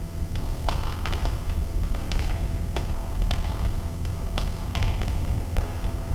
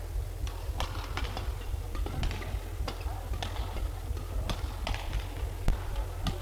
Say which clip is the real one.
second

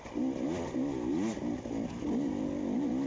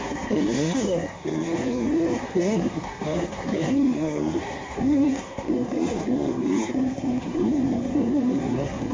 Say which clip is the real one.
first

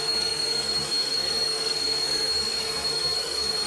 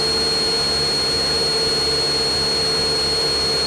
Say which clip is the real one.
second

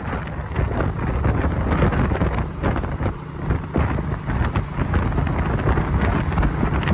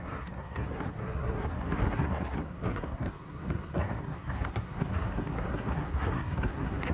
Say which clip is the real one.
first